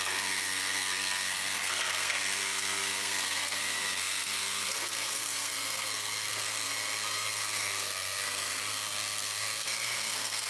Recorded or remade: remade